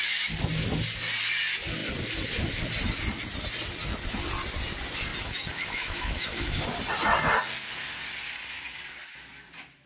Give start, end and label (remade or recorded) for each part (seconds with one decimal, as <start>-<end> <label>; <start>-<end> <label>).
0.0-5.1 recorded; 5.1-6.6 remade; 6.6-9.9 recorded